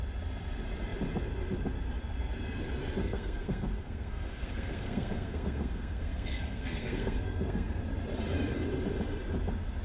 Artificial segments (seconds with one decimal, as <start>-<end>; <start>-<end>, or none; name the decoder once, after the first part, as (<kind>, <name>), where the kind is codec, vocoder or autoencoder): 3.0-7.8 (codec, SNAC)